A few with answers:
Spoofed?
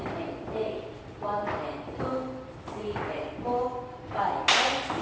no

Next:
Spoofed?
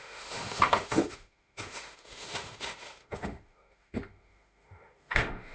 yes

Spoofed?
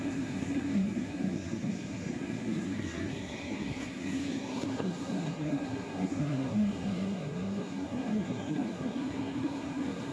yes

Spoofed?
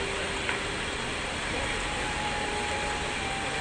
no